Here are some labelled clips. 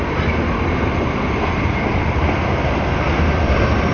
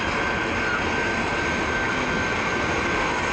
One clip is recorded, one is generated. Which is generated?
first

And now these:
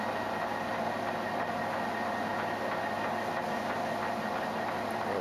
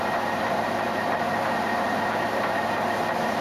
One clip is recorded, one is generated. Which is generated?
second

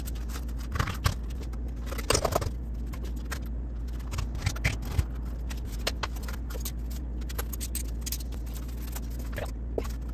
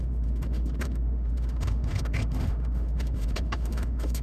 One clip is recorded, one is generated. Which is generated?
second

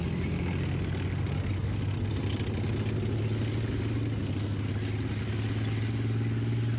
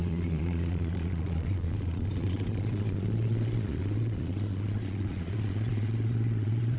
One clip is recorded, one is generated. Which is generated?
second